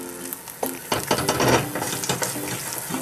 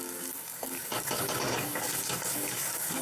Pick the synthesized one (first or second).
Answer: second